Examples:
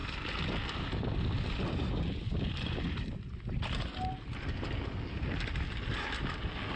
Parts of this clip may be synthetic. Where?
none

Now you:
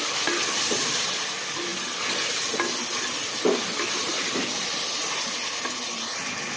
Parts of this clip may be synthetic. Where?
none

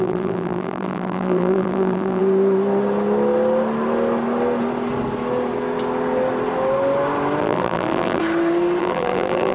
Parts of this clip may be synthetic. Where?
0.0-2.2; 7.4-8.2; 8.8-9.5

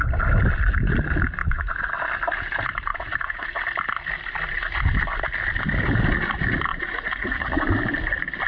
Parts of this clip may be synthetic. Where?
1.4-1.9; 2.9-3.6; 6.7-7.6

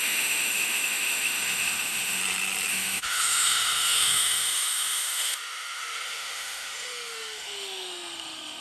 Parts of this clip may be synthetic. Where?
0.0-2.2; 2.7-8.6

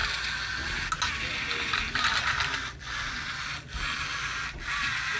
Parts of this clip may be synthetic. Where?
none